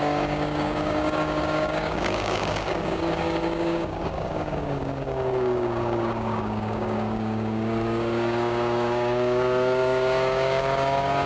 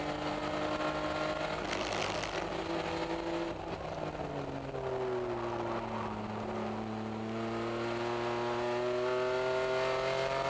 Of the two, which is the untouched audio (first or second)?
second